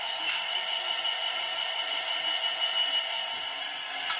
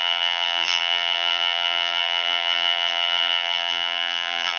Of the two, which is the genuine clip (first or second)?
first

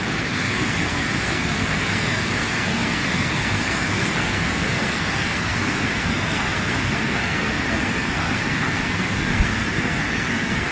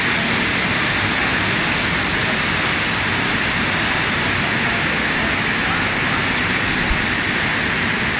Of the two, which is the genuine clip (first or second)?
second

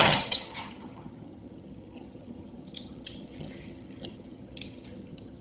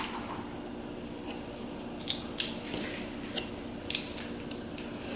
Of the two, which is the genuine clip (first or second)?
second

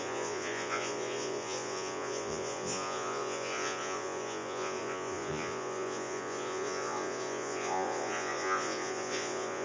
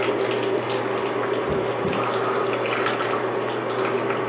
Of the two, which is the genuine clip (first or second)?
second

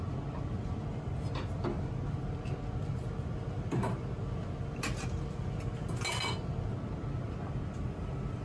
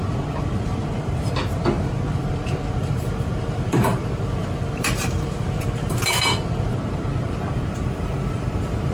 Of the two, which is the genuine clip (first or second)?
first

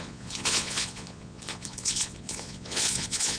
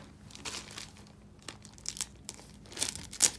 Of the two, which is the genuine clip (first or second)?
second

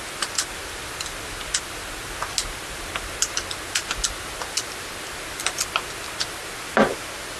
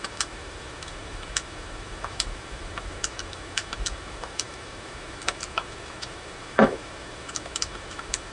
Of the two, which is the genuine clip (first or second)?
first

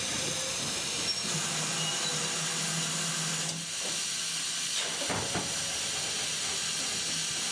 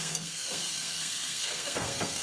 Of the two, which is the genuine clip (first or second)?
first